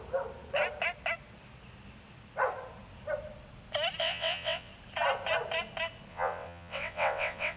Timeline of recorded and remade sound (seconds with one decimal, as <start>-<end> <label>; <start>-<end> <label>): 0.0-4.0 recorded; 4.0-4.7 remade; 4.7-6.1 recorded; 6.1-7.6 remade